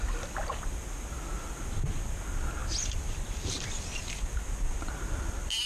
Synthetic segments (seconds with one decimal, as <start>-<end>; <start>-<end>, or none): none